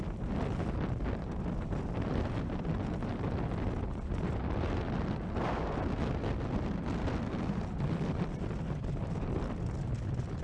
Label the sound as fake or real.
real